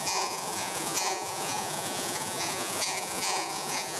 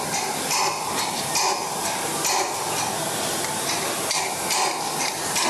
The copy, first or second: first